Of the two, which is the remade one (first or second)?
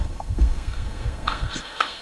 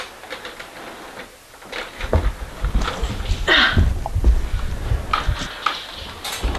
first